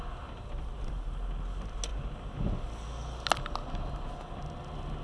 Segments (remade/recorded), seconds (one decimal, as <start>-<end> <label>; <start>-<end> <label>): 0.0-5.0 recorded